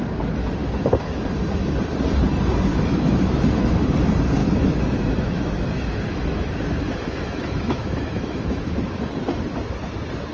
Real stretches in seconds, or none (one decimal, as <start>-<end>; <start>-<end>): 0.0-0.6; 1.2-2.7; 3.7-4.4; 9.0-10.3